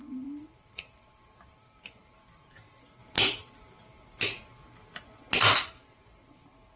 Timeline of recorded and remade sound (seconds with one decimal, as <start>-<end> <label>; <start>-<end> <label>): 0.0-3.0 remade; 3.0-5.4 recorded; 5.4-6.8 remade